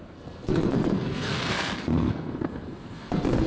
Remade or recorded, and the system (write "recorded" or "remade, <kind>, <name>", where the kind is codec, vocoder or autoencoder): remade, codec, SNAC